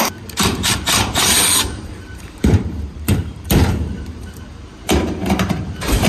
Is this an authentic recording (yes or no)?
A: no